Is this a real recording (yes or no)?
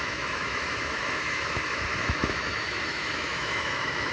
no